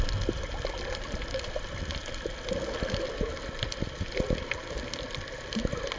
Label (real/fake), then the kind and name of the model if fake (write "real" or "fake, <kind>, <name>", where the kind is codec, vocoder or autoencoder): real